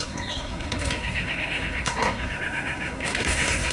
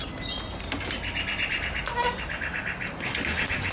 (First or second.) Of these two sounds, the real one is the second